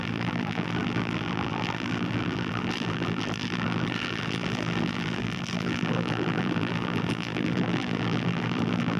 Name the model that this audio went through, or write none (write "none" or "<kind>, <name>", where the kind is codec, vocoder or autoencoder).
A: vocoder, BigVGAN v2